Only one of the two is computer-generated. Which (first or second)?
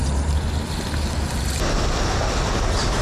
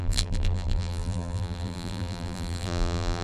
second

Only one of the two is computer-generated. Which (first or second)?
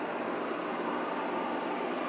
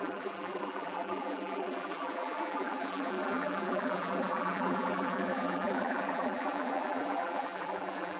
second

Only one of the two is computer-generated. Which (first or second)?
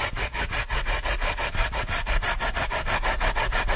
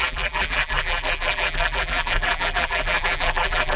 second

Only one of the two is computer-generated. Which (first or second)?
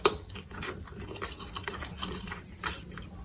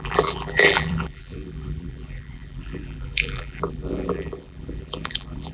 second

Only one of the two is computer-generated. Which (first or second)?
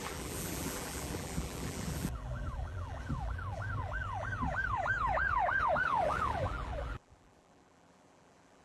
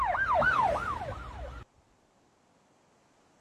first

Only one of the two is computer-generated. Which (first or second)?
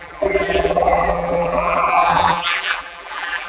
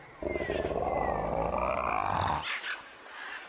first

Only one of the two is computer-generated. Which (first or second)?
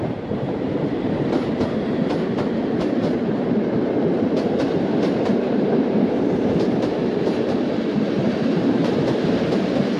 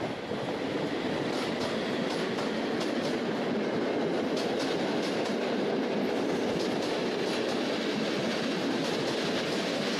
first